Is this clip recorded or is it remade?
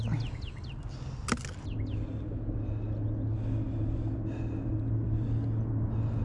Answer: recorded